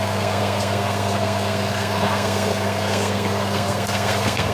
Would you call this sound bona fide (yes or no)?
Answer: no